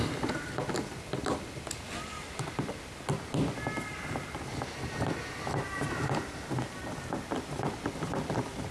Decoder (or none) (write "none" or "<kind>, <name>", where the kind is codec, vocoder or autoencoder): none